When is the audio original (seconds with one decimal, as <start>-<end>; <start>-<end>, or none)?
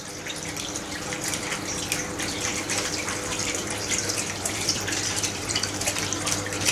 0.0-2.5; 5.8-6.7